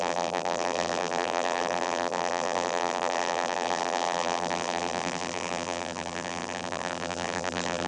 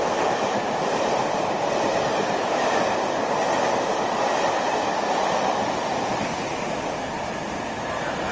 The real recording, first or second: second